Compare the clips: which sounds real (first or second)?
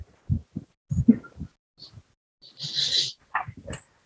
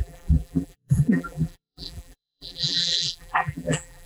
first